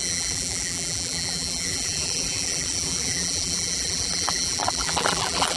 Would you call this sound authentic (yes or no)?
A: no